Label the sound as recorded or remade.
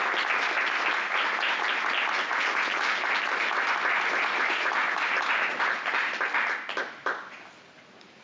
recorded